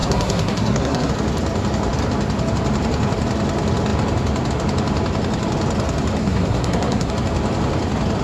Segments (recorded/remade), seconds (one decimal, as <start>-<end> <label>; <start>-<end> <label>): 0.0-1.1 remade; 1.1-6.2 recorded; 6.2-7.1 remade; 7.1-8.2 recorded

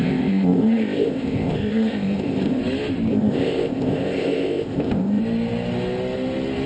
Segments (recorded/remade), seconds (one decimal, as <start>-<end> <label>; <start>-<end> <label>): 0.0-2.6 remade; 2.6-3.1 recorded; 3.1-5.2 remade; 5.2-6.7 recorded

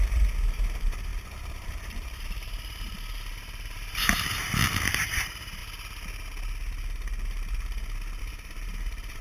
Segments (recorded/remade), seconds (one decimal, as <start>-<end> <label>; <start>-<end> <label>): 0.0-5.6 remade; 5.6-8.2 recorded; 8.2-9.2 remade

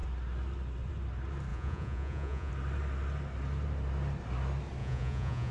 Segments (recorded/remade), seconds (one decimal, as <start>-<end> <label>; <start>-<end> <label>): 0.0-1.5 recorded; 1.5-2.5 remade; 2.5-4.8 recorded; 4.8-5.5 remade

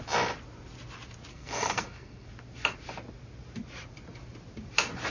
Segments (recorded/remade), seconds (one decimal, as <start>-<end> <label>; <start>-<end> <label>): 0.0-1.3 recorded; 1.3-2.3 remade; 2.3-5.1 recorded